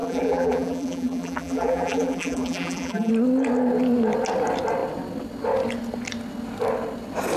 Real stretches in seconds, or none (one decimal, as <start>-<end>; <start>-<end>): 3.1-7.4